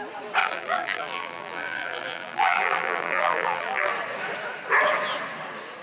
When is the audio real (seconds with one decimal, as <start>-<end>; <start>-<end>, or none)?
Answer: 0.0-0.4; 3.9-5.8